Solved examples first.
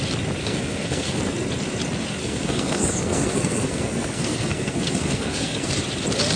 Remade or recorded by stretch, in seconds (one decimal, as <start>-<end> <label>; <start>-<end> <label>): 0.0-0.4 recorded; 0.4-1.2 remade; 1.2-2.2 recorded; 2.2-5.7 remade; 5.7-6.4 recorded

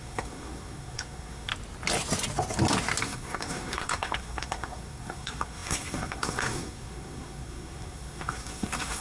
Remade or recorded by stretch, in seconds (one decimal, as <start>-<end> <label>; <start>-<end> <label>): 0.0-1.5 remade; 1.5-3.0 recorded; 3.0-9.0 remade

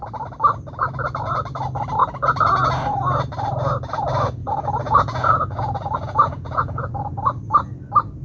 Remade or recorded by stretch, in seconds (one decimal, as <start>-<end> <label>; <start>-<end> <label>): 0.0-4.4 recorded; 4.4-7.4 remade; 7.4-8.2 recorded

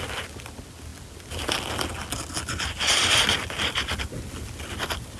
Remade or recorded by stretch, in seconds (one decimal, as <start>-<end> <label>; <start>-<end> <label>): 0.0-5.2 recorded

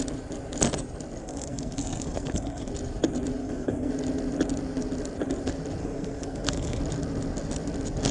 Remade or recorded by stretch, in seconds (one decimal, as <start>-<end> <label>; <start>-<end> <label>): 0.0-1.2 recorded; 1.2-2.7 remade; 2.7-3.4 recorded; 3.4-3.9 remade; 3.9-5.8 recorded; 5.8-6.8 remade; 6.8-8.1 recorded

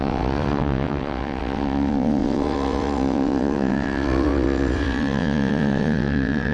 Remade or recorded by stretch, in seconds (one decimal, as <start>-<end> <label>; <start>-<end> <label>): 0.0-6.5 remade

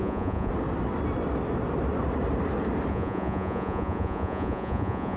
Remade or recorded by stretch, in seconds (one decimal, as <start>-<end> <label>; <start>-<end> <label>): 0.0-0.5 remade; 0.5-2.9 recorded; 2.9-5.2 remade